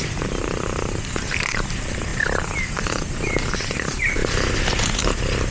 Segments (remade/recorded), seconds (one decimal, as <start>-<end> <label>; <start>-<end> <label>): 0.0-2.1 remade; 2.1-3.7 recorded; 3.7-4.2 remade; 4.2-4.7 recorded; 4.7-5.5 remade